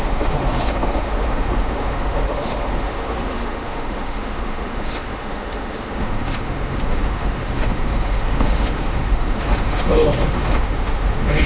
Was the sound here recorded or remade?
remade